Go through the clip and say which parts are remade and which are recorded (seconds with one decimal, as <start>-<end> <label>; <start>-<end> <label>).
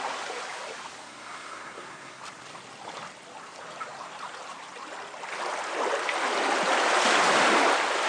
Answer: 0.0-1.0 recorded; 1.0-2.2 remade; 2.2-8.1 recorded